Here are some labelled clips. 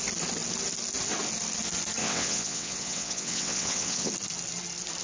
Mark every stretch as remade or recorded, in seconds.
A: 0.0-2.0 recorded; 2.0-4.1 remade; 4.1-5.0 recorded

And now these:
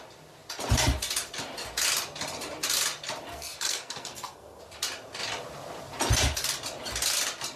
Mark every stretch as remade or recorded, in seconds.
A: 0.0-3.3 recorded; 3.3-4.6 remade; 4.6-7.6 recorded